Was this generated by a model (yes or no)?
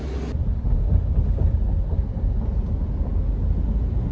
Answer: no